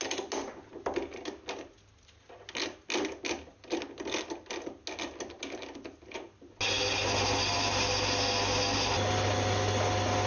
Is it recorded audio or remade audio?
recorded